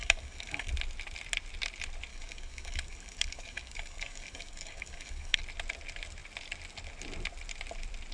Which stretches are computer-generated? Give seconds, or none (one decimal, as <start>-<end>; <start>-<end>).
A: 0.0-0.7; 2.1-5.4